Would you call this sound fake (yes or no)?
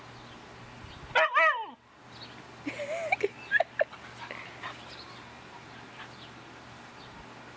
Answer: no